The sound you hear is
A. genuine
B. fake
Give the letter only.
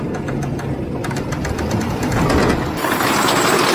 A